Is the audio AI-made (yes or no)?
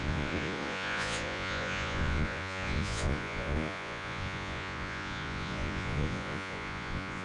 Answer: yes